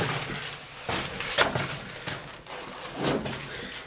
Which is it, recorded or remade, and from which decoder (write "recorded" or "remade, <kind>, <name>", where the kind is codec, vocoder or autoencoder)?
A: recorded